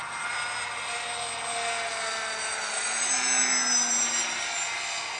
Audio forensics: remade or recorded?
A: recorded